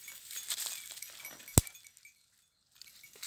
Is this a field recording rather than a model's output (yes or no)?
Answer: yes